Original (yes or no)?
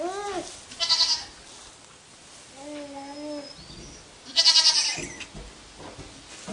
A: yes